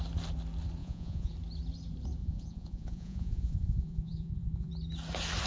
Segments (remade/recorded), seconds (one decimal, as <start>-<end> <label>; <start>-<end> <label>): 0.0-0.8 recorded; 0.8-1.3 remade; 1.3-2.2 recorded; 2.2-4.7 remade; 4.7-5.5 recorded